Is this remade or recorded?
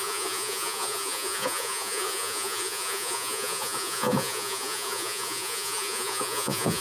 remade